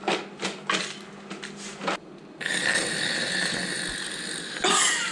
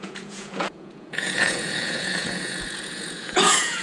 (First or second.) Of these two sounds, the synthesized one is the second